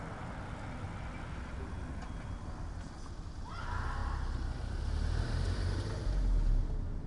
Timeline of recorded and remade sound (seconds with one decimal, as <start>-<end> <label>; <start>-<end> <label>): 0.0-4.0 recorded; 4.0-5.9 remade; 5.9-7.1 recorded